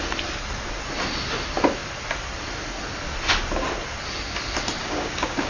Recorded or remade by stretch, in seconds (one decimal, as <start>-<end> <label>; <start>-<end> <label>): 0.0-4.8 recorded; 4.8-5.5 remade